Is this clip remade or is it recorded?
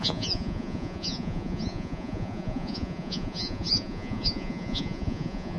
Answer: remade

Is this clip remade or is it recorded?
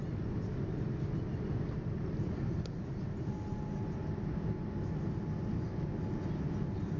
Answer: recorded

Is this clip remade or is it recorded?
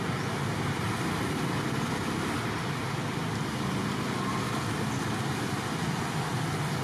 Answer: recorded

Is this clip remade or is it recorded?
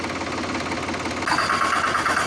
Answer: recorded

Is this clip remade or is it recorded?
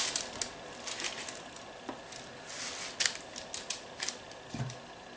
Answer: recorded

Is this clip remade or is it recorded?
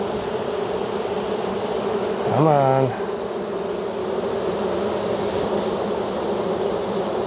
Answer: recorded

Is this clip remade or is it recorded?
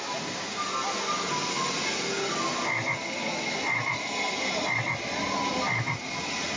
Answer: recorded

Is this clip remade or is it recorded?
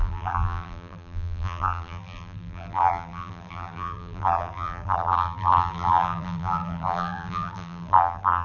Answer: remade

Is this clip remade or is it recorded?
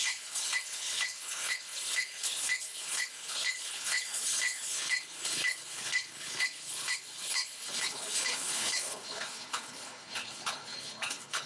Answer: remade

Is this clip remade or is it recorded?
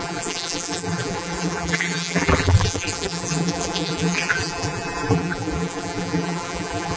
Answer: remade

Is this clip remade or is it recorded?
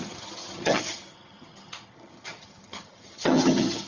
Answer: remade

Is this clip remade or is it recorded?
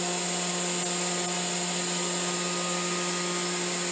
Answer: recorded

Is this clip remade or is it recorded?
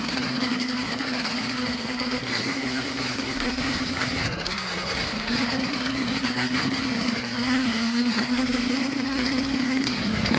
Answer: remade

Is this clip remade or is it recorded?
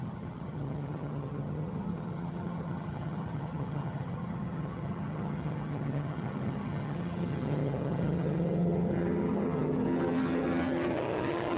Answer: remade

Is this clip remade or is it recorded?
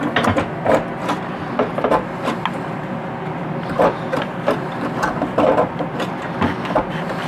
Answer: recorded